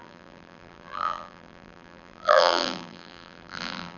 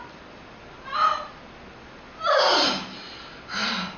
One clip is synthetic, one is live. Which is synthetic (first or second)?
first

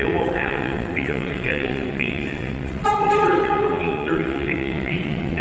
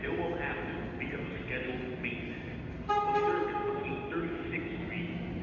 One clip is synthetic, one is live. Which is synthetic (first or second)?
first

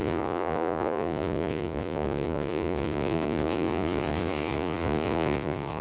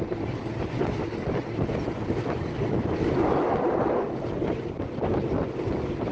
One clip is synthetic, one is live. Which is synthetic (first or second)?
first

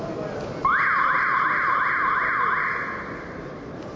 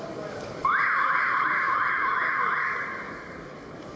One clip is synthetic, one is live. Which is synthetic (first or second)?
second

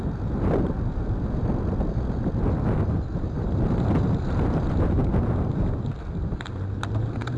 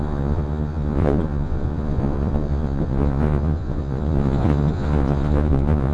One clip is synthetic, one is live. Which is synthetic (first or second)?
second